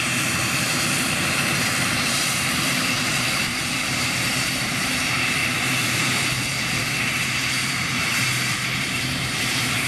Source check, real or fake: fake